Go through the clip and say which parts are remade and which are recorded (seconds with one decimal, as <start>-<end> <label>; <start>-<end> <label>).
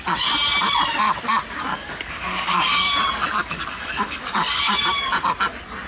0.0-1.7 recorded; 1.7-2.9 remade; 2.9-3.4 recorded; 3.4-4.8 remade; 4.8-5.9 recorded